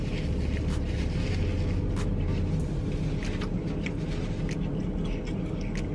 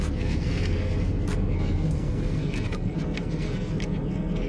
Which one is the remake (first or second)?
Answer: second